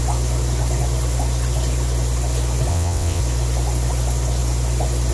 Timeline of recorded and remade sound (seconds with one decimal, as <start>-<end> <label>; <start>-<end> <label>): 0.0-2.7 recorded; 2.7-3.2 remade; 3.2-5.1 recorded